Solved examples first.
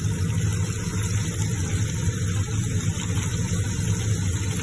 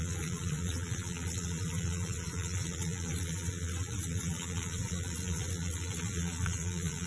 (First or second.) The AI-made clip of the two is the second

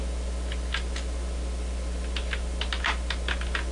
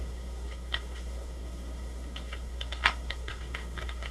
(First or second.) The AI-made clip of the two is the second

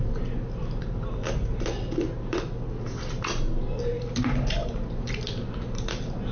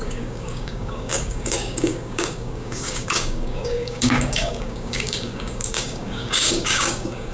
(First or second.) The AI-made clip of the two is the second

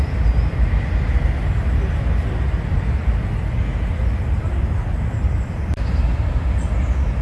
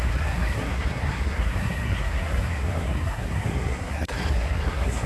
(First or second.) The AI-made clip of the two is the second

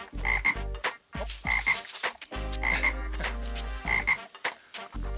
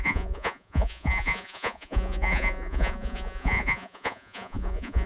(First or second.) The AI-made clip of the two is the second